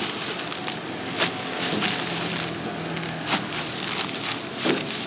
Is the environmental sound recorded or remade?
recorded